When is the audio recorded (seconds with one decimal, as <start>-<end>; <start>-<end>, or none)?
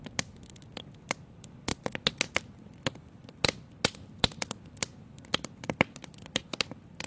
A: 0.0-7.1